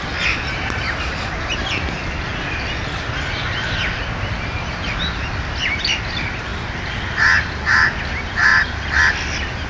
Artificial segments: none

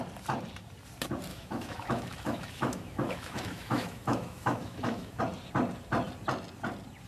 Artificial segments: 1.3-5.2 (autoencoder, DAC-VAE)

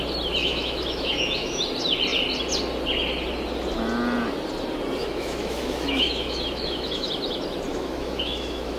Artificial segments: 0.4-1.6 (autoencoder, DAC-VAE); 5.0-7.1; 7.7-8.8

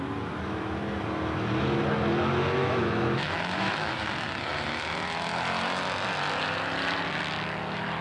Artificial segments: 2.6-3.9 (autoencoder, DAC-VAE)